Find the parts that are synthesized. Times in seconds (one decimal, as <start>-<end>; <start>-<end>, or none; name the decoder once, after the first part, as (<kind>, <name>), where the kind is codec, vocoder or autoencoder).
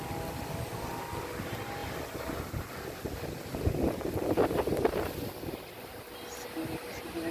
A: none